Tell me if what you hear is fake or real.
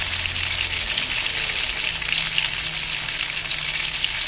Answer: real